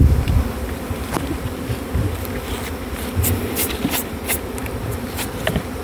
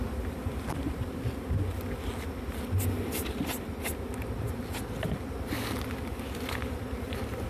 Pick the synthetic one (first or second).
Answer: first